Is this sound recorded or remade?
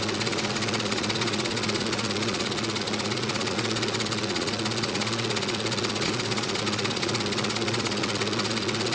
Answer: remade